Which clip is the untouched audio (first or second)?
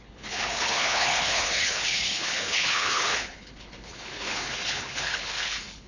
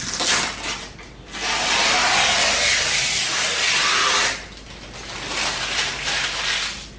second